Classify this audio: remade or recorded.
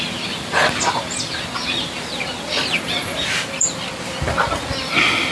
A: recorded